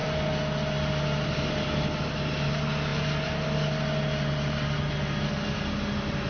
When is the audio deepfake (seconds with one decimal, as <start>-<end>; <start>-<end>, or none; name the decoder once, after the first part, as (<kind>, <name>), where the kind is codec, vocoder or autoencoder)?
none